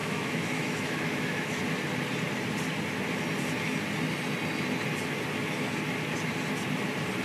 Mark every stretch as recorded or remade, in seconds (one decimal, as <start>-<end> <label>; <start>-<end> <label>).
0.0-1.6 remade; 1.6-7.2 recorded